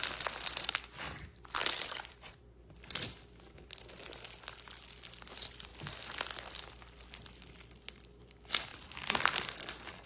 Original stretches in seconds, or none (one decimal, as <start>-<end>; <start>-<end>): 0.0-1.6; 2.3-8.7